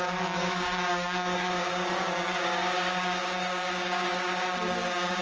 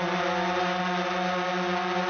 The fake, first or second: first